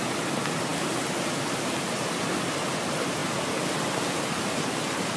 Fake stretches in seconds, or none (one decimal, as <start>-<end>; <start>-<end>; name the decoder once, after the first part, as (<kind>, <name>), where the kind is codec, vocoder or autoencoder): none